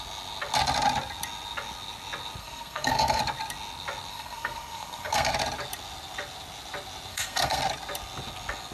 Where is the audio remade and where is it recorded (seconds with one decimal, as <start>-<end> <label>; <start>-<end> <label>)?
0.0-2.4 recorded; 2.4-3.2 remade; 3.2-4.1 recorded; 4.1-5.3 remade; 5.3-7.1 recorded; 7.1-7.6 remade; 7.6-8.7 recorded